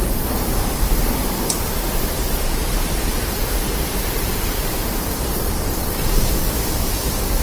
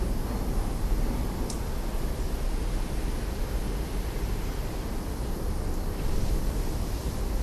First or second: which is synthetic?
first